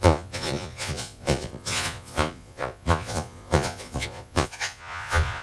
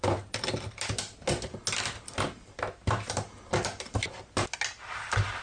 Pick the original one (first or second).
second